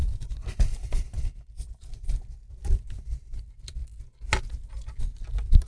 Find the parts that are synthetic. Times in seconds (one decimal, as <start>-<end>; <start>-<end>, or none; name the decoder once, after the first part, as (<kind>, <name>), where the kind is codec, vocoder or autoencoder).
0.0-3.8 (vocoder, BigVGAN v2); 5.0-5.7